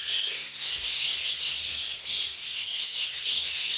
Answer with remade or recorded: remade